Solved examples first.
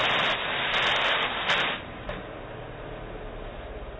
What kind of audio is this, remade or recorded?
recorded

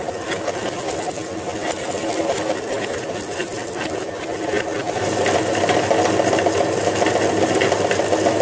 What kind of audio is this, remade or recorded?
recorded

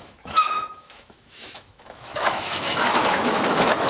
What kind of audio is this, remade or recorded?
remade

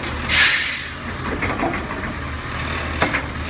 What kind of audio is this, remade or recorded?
recorded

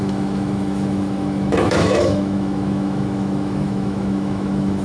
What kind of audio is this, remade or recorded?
remade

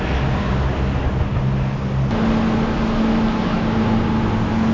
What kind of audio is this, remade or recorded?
recorded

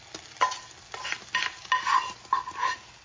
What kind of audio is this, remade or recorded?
recorded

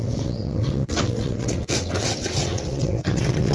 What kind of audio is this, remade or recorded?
remade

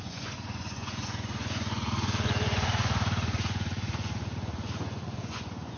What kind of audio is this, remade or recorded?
remade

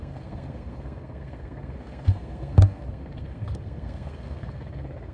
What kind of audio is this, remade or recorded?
remade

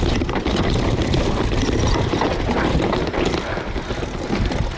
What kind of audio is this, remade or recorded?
recorded